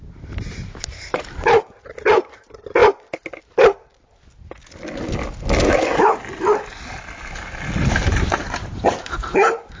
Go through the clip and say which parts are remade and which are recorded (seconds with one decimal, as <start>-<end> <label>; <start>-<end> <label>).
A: 0.0-2.8 remade; 2.8-7.9 recorded; 7.9-9.8 remade